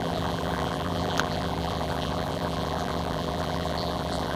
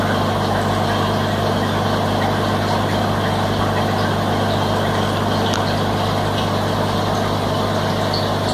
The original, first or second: second